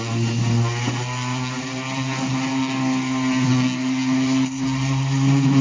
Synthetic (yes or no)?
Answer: no